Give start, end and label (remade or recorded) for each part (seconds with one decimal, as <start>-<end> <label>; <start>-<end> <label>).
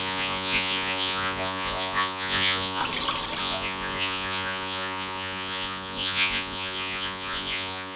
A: 0.0-2.8 remade; 2.8-3.4 recorded; 3.4-8.0 remade